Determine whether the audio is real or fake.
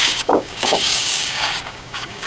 fake